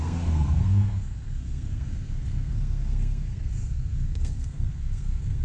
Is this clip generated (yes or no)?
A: yes